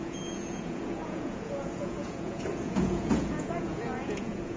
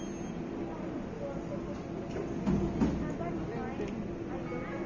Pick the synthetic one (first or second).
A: first